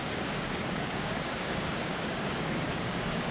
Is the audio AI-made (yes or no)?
yes